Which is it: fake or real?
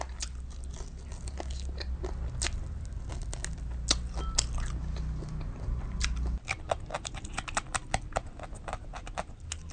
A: real